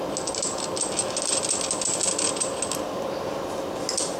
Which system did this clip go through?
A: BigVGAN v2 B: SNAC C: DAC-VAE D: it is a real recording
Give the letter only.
D